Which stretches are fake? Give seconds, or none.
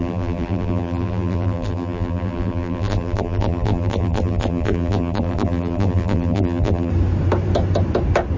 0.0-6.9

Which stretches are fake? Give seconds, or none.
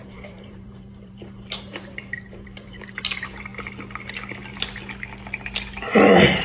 0.0-3.5; 6.0-6.4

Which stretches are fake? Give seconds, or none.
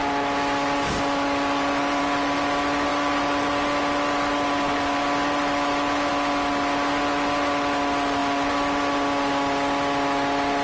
0.0-2.0; 8.2-9.3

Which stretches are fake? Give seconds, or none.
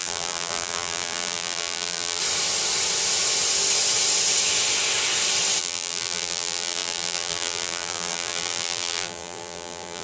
0.0-2.2; 5.6-10.0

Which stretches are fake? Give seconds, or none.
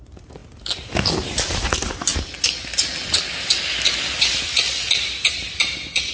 none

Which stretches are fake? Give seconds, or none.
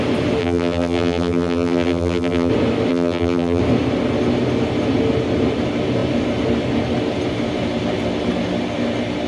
0.4-2.5; 2.9-3.6